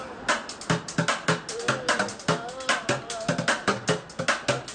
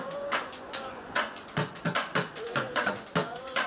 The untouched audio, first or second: first